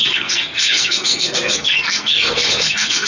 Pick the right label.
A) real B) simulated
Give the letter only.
B